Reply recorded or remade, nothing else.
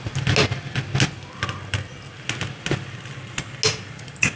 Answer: recorded